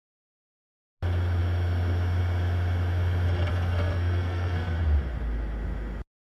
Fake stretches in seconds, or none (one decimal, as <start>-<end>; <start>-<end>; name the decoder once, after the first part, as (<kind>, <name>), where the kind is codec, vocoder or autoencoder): 3.5-4.8 (codec, SNAC)